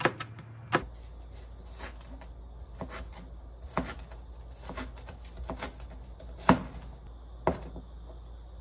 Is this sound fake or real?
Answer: real